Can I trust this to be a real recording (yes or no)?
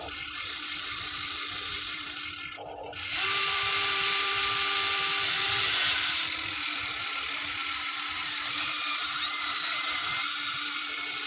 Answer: no